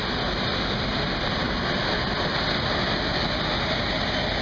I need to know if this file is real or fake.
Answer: real